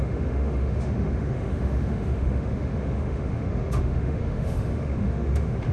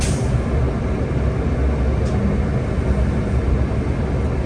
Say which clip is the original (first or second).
second